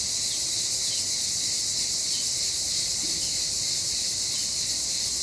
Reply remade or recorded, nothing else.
recorded